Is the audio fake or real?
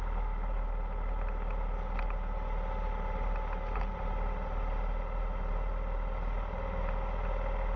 real